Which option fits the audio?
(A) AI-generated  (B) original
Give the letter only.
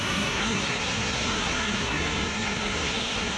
A